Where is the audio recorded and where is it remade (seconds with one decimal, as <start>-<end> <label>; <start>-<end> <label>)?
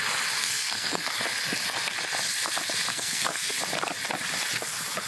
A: 0.0-0.4 recorded; 0.4-1.1 remade; 1.1-2.9 recorded; 2.9-3.6 remade; 3.6-5.1 recorded